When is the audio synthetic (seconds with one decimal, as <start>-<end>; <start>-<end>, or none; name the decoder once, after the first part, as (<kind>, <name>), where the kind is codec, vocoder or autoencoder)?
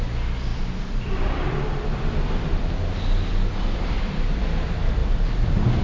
0.5-2.6 (vocoder, BigVGAN v2); 3.3-4.0